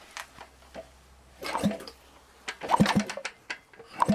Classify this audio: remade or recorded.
recorded